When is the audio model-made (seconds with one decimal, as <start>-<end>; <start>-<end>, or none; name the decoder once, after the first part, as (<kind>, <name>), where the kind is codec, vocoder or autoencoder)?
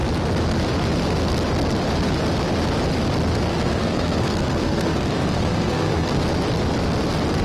3.5-6.2 (codec, SNAC)